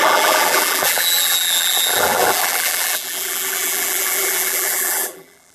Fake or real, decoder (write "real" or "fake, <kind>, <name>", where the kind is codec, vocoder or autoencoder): fake, vocoder, BigVGAN v2